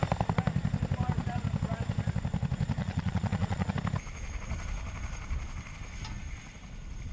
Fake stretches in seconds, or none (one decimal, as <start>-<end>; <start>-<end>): 2.8-3.7